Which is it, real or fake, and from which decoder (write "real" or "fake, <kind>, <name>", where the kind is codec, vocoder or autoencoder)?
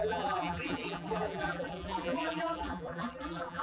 fake, vocoder, BigVGAN v2